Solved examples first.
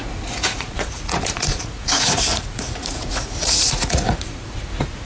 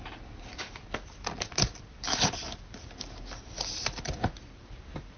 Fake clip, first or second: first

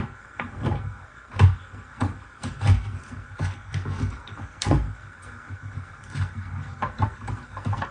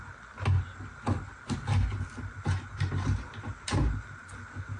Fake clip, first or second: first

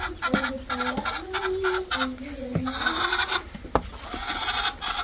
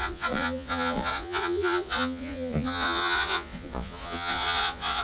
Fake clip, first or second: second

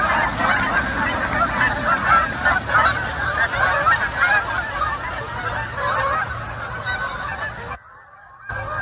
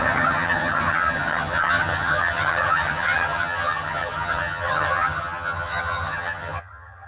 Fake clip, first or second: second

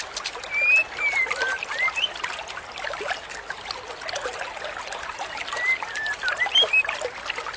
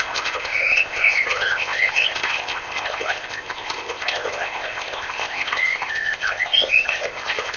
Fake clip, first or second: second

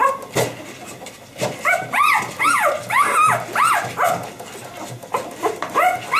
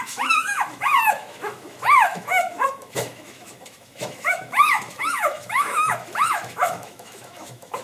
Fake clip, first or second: second